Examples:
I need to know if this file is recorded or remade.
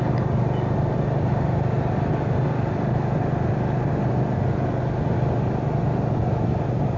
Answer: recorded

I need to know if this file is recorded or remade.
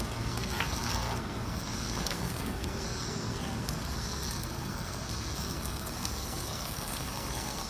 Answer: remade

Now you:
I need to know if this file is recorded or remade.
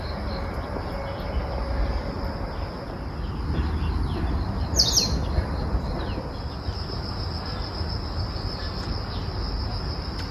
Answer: recorded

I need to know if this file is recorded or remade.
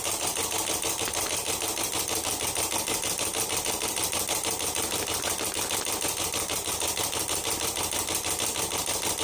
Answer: remade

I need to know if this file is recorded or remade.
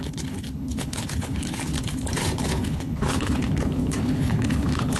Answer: remade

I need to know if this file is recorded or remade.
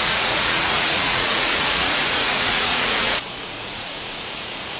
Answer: remade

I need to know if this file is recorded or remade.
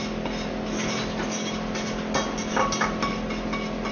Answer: recorded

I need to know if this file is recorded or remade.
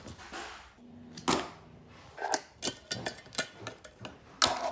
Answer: recorded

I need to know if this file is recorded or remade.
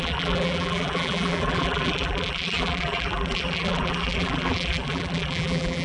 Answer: remade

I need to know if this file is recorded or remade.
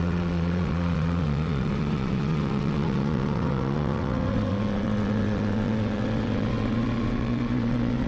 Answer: remade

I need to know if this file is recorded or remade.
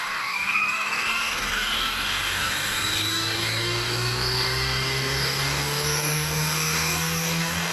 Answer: remade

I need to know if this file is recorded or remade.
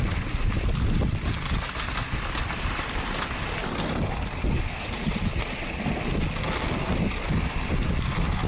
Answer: recorded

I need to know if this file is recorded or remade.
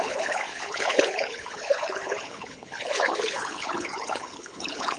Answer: remade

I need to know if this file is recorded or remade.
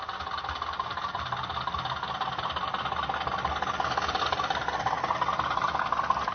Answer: recorded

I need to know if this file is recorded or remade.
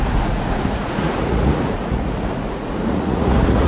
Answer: remade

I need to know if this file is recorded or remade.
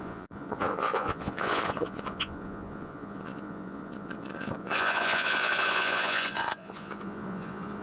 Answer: remade